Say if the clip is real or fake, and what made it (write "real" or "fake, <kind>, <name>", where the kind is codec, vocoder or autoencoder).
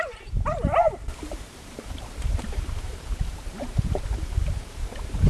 fake, vocoder, BigVGAN v2